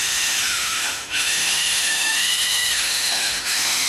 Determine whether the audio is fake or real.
fake